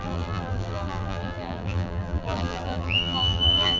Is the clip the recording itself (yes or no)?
no